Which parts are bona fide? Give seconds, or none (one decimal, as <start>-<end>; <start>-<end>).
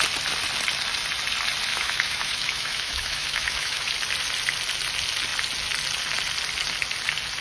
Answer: 0.0-1.7; 3.9-7.4